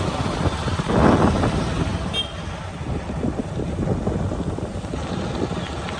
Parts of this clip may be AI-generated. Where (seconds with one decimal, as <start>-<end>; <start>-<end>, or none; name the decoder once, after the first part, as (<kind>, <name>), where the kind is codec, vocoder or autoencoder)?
none